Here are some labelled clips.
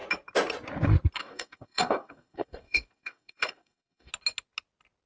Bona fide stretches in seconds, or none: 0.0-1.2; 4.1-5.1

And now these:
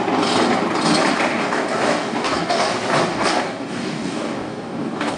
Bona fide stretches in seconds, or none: 0.0-1.3; 2.7-3.1

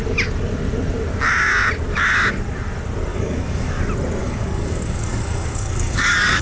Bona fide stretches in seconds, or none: 0.0-3.1; 3.8-4.2

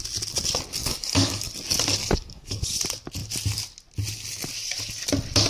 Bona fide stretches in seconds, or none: 0.0-0.8; 1.5-2.0; 2.8-5.5

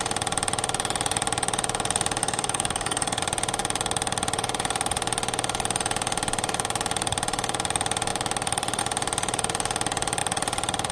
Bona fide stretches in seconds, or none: 0.0-2.2; 3.2-10.9